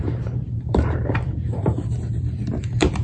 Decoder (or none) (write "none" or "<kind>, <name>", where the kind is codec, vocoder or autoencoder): vocoder, BigVGAN v2